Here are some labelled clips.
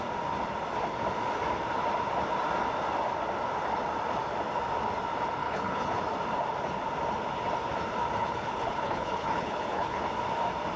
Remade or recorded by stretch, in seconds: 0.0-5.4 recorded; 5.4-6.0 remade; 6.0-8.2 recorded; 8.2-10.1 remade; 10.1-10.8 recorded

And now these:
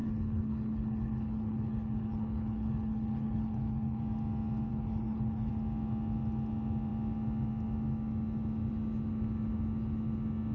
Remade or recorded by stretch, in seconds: 0.0-4.0 remade; 4.0-4.7 recorded; 4.7-5.5 remade; 5.5-10.5 recorded

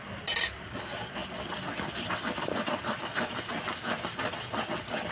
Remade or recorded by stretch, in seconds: 0.0-5.1 recorded

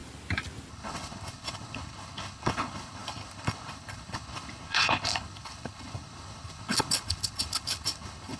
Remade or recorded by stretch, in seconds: 0.0-0.7 recorded; 0.7-8.4 remade

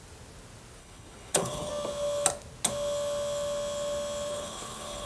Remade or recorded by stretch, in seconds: 0.0-0.8 recorded; 0.8-1.7 remade; 1.7-4.3 recorded; 4.3-5.1 remade

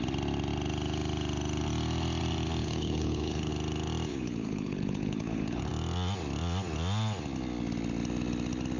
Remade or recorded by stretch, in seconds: 0.0-2.6 recorded; 2.6-3.5 remade; 3.5-4.1 recorded; 4.1-5.7 remade; 5.7-8.8 recorded